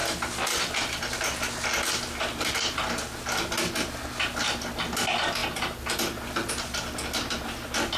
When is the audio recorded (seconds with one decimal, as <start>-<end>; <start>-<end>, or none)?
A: 1.0-5.4; 6.5-8.0